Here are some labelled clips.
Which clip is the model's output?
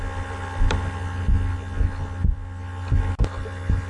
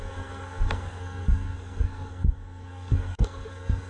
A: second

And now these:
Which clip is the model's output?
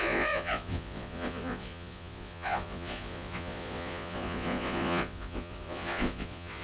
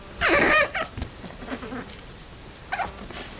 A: first